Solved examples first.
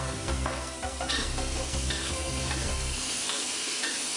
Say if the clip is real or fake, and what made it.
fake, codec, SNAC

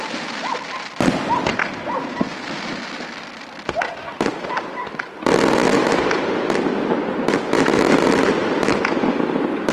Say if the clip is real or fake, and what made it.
real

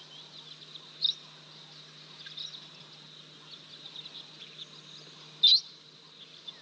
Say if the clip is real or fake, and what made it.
real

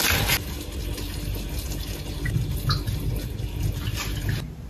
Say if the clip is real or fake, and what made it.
real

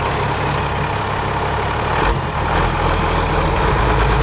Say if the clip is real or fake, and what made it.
real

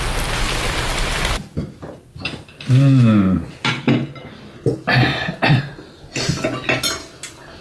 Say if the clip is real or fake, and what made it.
real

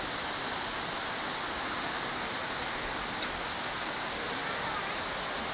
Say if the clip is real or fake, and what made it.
real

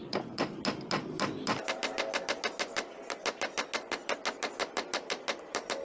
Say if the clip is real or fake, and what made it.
real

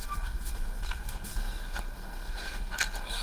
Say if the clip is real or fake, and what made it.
fake, codec, SNAC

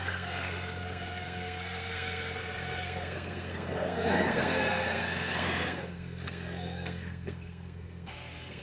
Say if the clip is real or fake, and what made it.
fake, codec, SNAC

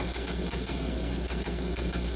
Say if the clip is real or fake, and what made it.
fake, codec, SNAC